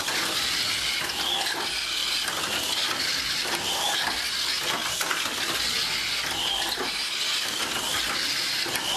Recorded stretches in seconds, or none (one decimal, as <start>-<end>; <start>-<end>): 0.0-9.0